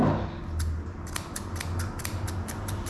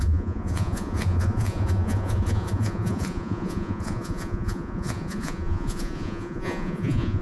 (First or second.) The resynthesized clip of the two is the second